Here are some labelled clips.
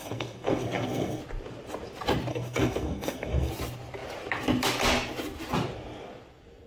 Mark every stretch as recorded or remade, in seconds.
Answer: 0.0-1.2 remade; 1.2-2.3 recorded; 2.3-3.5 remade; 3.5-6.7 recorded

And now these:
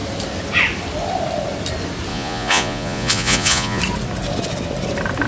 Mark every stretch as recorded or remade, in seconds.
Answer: 0.0-2.1 recorded; 2.1-3.8 remade; 3.8-5.3 recorded

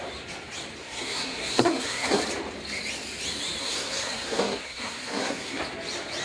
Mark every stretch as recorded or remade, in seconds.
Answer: 0.0-0.8 recorded; 0.8-2.2 remade; 2.2-3.6 recorded; 3.6-5.6 remade; 5.6-6.2 recorded

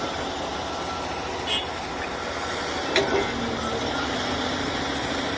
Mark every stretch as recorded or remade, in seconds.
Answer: 0.0-5.4 recorded

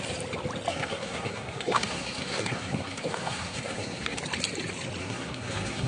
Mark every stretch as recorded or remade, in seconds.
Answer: 0.0-0.7 recorded; 0.7-4.2 remade; 4.2-5.0 recorded; 5.0-5.9 remade

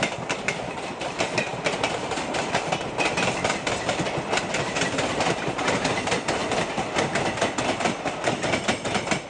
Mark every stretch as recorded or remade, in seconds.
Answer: 0.0-9.3 recorded

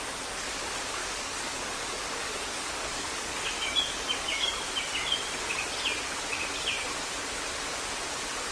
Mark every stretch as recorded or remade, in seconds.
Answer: 0.0-1.0 recorded; 1.0-4.7 remade; 4.7-8.5 recorded